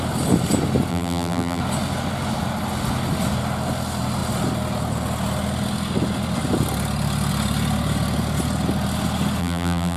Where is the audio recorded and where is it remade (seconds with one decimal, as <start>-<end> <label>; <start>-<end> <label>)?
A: 0.0-0.9 recorded; 0.9-1.6 remade; 1.6-9.4 recorded; 9.4-10.0 remade